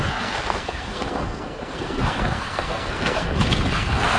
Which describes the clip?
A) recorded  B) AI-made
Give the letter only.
B